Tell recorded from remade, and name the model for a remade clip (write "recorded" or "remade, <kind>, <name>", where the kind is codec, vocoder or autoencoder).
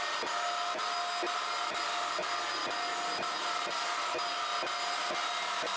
recorded